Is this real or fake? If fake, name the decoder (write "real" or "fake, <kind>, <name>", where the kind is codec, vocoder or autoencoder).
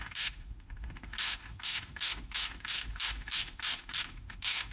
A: fake, autoencoder, DAC-VAE